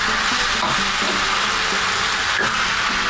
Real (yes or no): yes